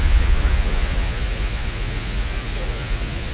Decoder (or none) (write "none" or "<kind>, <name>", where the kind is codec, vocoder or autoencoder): vocoder, Vocos